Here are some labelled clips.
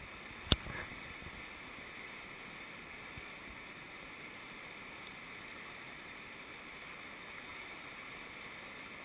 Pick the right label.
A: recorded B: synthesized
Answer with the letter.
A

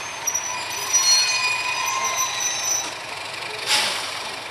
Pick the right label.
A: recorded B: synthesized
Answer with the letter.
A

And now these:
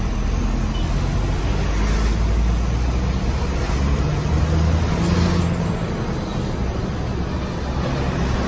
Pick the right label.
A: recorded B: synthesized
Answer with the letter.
A